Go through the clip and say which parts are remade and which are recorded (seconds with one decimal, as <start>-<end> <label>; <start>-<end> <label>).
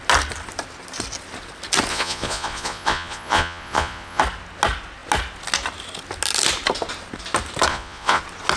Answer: 0.0-1.9 recorded; 1.9-4.2 remade; 4.2-7.7 recorded; 7.7-8.2 remade; 8.2-8.6 recorded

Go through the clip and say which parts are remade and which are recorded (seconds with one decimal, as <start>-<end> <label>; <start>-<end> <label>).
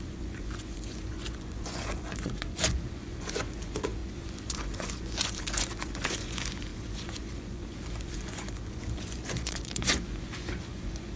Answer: 0.0-11.2 remade